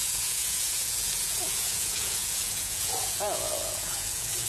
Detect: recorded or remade remade